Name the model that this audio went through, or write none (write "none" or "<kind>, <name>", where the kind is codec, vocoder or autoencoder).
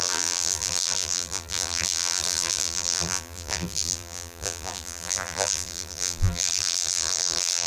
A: vocoder, BigVGAN v2